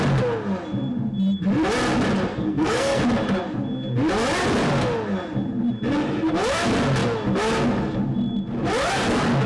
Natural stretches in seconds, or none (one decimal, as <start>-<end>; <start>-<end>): 0.0-2.3; 3.0-9.5